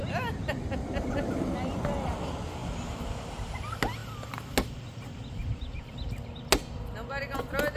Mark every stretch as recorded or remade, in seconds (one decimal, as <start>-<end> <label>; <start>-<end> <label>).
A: 0.0-7.8 recorded

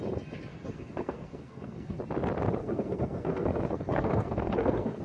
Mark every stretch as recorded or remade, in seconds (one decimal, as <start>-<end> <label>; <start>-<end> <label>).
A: 0.0-0.5 recorded; 0.5-2.0 remade; 2.0-2.6 recorded; 2.6-5.0 remade

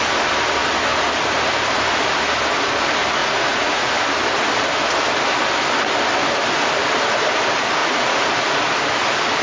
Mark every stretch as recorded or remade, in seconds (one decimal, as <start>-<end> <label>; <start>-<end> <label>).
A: 0.0-3.2 recorded; 3.2-3.9 remade; 3.9-7.8 recorded; 7.8-8.3 remade; 8.3-9.4 recorded

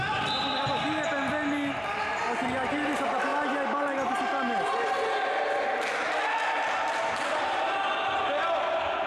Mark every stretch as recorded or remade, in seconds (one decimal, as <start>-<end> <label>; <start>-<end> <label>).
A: 0.0-9.1 recorded

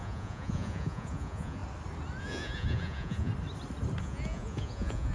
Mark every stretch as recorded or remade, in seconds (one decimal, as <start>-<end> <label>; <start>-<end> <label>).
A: 0.0-1.6 remade; 1.6-2.2 recorded; 2.2-3.3 remade; 3.3-4.0 recorded; 4.0-5.1 remade

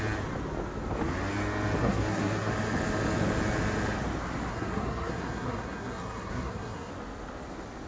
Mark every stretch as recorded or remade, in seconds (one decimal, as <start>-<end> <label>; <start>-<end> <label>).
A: 0.0-1.8 recorded; 1.8-2.5 remade; 2.5-4.5 recorded; 4.5-6.9 remade; 6.9-7.9 recorded

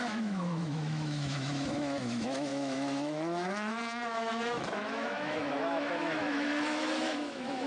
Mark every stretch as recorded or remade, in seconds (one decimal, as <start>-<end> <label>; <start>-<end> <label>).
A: 0.0-7.7 remade

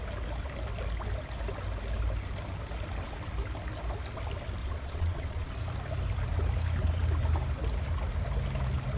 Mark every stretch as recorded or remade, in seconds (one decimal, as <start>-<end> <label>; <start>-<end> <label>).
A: 0.0-4.6 recorded; 4.6-5.5 remade; 5.5-9.0 recorded